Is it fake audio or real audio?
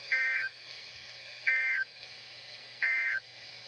fake